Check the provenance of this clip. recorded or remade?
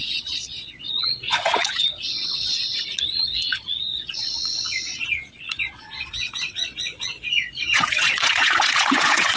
remade